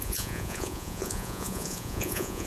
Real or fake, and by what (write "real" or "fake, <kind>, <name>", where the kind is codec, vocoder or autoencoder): fake, vocoder, Vocos